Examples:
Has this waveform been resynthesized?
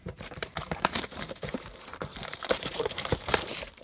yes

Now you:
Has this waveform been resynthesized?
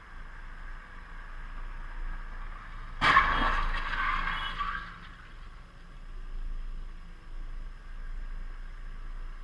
no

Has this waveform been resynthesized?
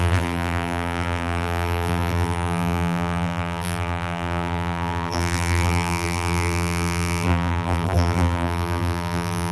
yes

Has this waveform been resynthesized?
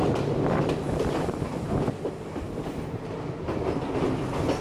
no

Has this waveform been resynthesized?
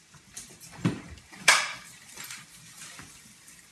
yes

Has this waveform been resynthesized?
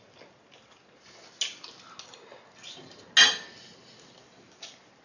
no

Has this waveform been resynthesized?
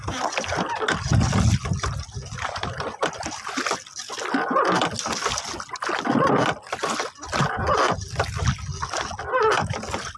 no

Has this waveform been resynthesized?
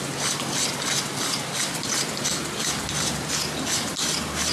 no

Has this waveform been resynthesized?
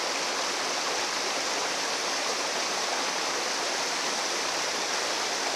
no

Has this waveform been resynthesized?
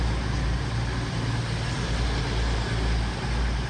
no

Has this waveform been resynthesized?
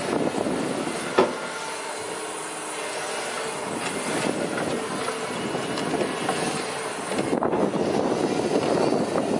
no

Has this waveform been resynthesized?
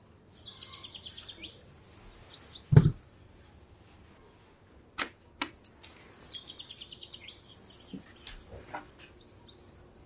no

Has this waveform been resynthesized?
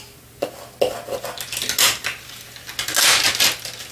no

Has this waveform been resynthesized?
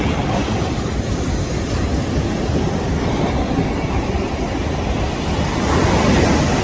no